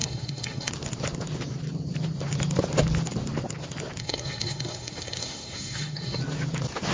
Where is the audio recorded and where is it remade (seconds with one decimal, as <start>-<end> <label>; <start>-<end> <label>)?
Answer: 0.0-0.7 remade; 0.7-4.0 recorded; 4.0-6.2 remade; 6.2-6.9 recorded